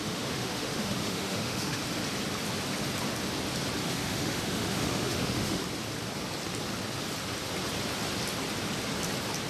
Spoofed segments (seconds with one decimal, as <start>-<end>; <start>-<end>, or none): 0.0-1.8; 3.8-5.6